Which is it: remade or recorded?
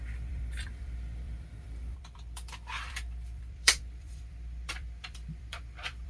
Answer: remade